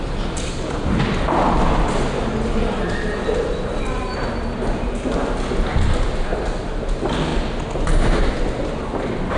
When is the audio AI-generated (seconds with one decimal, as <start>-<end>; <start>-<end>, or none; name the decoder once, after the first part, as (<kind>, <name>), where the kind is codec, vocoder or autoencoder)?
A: none